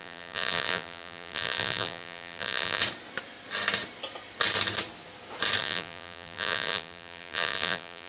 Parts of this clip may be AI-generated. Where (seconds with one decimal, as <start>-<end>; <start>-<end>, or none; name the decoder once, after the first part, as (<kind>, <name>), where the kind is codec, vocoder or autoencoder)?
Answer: 0.0-2.8 (vocoder, BigVGAN v2); 5.6-8.1